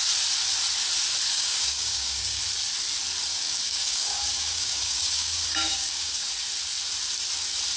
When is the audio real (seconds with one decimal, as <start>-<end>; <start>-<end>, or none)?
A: 0.0-1.3; 2.4-3.3; 6.3-7.8